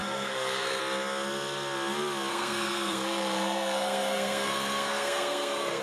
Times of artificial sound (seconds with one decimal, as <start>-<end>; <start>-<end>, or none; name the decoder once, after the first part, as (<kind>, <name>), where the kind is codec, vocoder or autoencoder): 0.0-0.8 (codec, SNAC); 2.3-5.8